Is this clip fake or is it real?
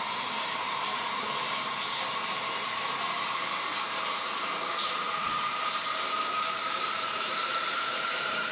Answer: fake